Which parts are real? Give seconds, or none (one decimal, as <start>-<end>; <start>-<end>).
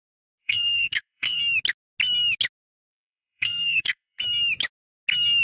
0.0-0.4; 1.4-2.9; 4.2-5.4